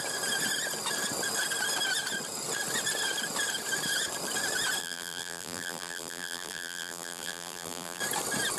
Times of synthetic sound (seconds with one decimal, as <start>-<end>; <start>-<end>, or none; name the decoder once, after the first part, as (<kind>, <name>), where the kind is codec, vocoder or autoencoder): 4.8-8.0 (vocoder, BigVGAN v2)